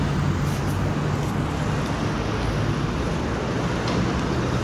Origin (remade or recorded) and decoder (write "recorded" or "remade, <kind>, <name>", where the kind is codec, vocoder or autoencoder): recorded